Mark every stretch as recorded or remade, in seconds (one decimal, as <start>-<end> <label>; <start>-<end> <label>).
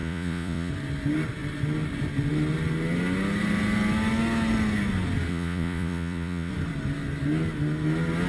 0.0-0.7 remade; 0.7-5.3 recorded; 5.3-6.5 remade; 6.5-8.3 recorded